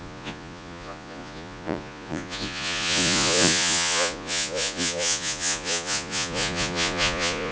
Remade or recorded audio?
remade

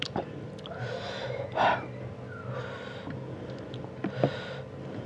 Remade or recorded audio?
recorded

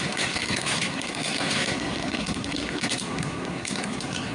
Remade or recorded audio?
remade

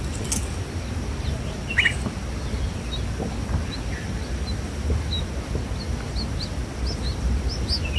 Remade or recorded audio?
recorded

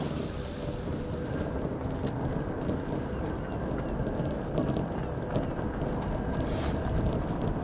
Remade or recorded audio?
recorded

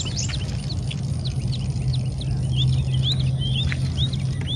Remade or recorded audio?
recorded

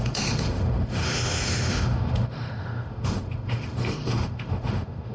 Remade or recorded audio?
remade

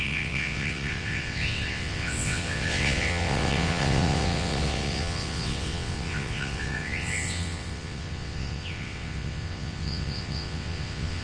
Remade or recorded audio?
remade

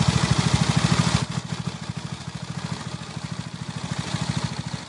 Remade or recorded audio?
recorded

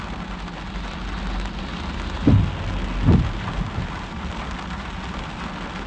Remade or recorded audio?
recorded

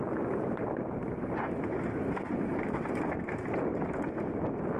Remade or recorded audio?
recorded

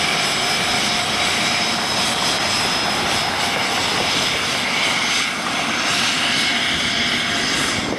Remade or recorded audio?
recorded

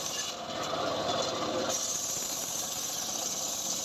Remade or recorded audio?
recorded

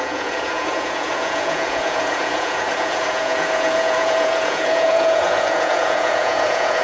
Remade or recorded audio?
remade